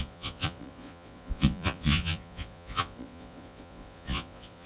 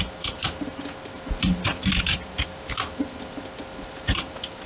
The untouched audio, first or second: second